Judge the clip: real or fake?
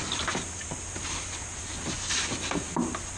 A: real